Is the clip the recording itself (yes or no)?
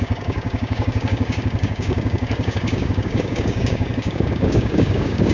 no